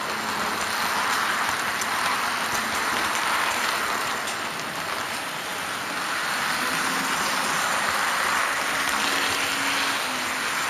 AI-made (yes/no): no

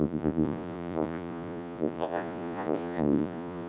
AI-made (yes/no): yes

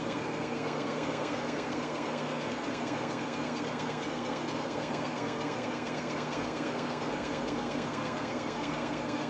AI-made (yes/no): yes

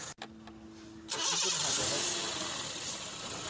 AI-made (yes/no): no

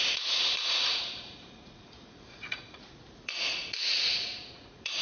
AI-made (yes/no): yes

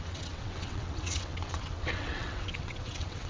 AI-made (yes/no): yes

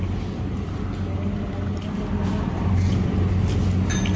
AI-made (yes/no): no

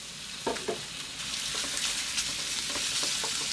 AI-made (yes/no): no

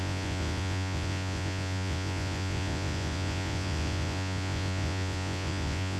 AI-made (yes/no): yes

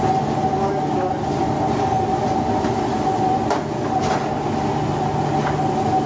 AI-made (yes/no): no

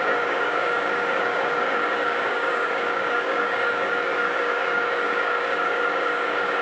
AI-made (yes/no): yes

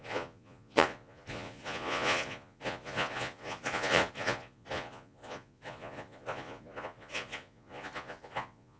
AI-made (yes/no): yes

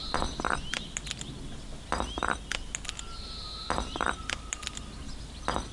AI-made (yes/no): no